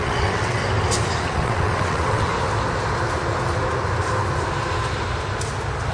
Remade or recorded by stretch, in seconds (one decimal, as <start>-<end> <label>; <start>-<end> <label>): 0.0-0.6 remade; 0.6-1.2 recorded; 1.2-2.3 remade; 2.3-5.9 recorded